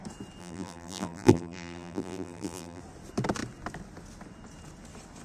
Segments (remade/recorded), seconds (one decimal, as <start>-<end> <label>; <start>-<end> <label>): 0.0-0.4 recorded; 0.4-2.8 remade; 2.8-5.2 recorded